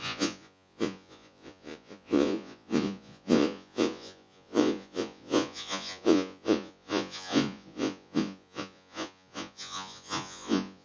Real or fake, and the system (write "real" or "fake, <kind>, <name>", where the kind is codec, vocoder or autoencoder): fake, vocoder, Vocos